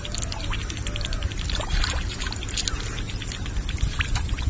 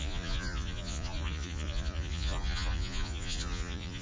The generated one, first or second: second